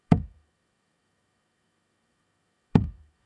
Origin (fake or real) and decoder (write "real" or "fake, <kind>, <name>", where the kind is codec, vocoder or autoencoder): fake, autoencoder, DAC-VAE